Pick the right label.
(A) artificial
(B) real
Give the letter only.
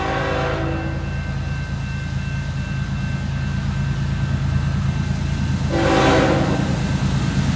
B